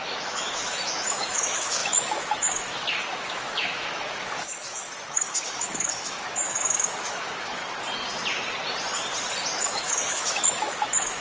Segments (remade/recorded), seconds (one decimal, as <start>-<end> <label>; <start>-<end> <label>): 0.0-7.6 remade; 7.6-9.6 recorded; 9.6-11.2 remade